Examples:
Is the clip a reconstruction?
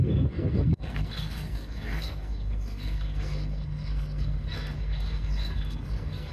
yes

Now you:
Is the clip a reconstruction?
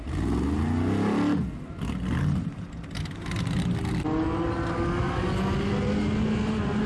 no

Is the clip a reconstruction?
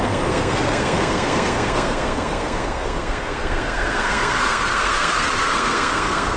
yes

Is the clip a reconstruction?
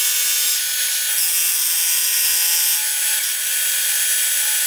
no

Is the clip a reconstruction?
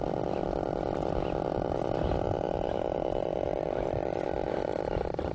no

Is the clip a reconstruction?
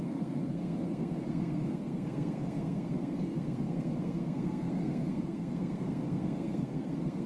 yes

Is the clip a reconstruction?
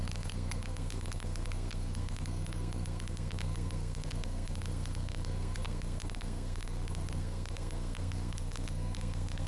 yes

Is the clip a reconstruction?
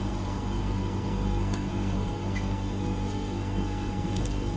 yes